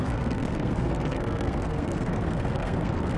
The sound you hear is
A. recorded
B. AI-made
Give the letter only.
B